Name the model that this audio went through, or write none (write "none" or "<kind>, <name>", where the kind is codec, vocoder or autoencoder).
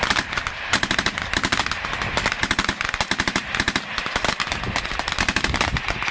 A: none